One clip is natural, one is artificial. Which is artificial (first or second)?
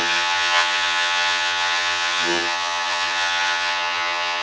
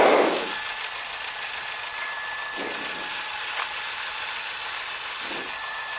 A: first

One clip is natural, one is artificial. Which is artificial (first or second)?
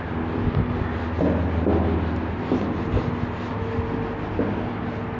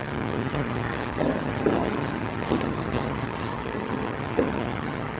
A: second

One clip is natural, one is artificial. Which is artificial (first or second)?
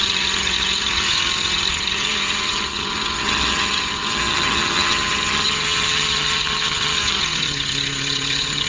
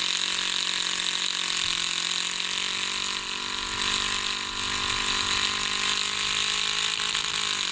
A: first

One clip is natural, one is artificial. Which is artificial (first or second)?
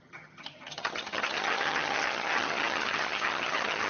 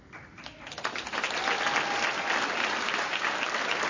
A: first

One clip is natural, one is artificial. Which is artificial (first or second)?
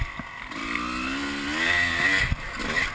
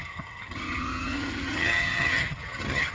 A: second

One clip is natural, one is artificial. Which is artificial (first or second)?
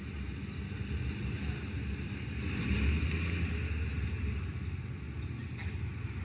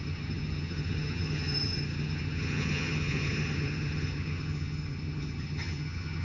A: second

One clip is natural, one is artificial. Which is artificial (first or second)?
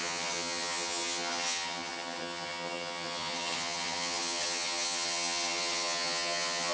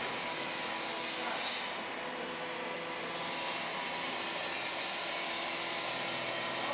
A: first